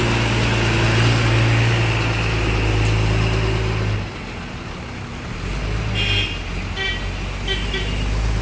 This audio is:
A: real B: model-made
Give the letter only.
A